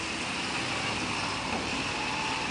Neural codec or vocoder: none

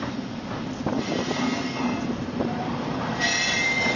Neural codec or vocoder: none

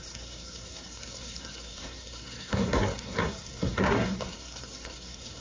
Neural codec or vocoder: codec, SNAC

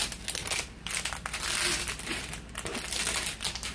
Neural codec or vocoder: none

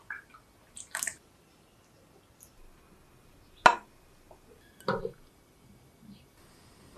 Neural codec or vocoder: none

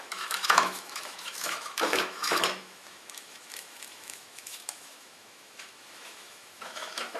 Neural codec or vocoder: autoencoder, DAC-VAE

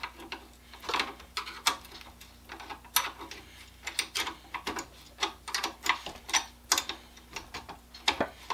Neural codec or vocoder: none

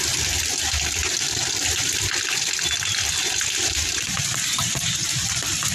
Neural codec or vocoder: vocoder, BigVGAN v2